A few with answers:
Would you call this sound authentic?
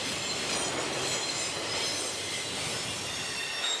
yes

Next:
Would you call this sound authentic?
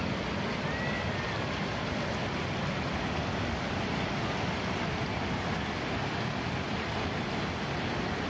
yes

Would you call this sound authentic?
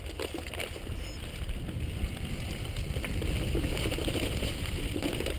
yes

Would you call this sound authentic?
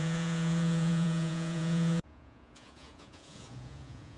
no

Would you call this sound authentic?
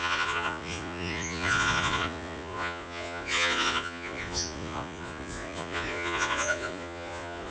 no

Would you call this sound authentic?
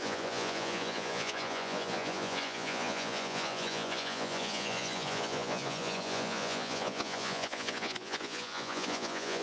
no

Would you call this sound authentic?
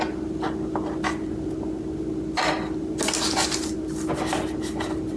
yes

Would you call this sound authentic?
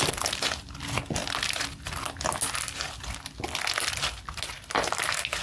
yes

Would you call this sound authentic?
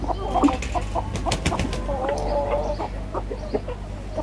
yes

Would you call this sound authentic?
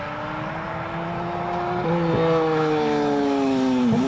yes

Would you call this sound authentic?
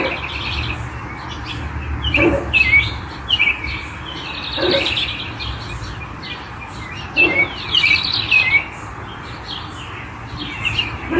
yes